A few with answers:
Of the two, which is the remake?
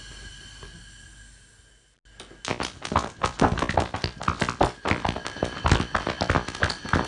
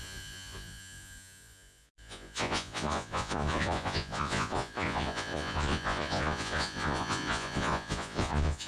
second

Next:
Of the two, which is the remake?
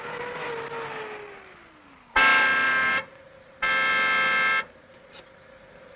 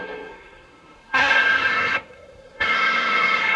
second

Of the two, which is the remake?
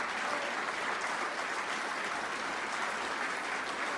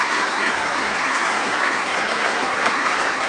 second